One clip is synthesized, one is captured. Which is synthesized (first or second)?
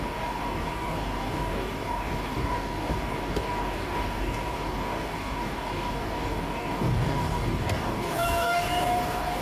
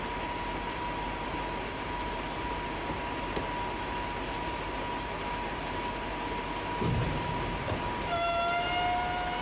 first